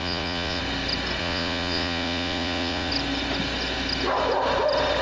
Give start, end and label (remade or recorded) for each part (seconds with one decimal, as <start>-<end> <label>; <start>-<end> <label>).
0.0-0.6 remade; 0.6-1.2 recorded; 1.2-2.9 remade; 2.9-5.0 recorded